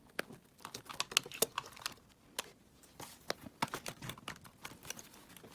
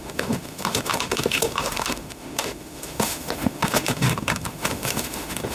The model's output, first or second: second